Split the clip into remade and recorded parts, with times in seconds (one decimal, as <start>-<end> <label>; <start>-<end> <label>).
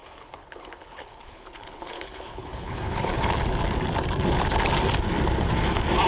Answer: 0.0-3.3 remade; 3.3-6.1 recorded